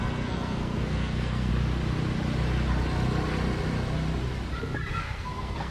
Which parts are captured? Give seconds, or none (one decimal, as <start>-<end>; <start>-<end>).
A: 1.5-4.9